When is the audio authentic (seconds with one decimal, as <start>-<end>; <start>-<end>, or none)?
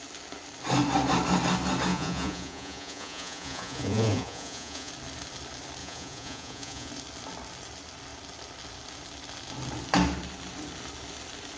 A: 0.0-1.9; 4.9-5.8; 6.9-11.6